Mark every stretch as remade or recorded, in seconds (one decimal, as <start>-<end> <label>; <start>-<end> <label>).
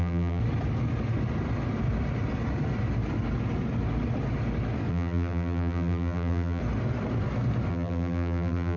0.0-0.4 remade; 0.4-4.9 recorded; 4.9-6.6 remade; 6.6-7.7 recorded; 7.7-8.8 remade